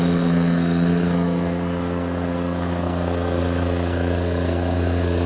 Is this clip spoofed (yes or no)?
yes